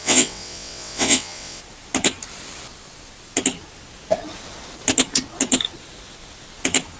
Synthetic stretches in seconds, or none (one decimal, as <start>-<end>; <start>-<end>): 0.0-1.6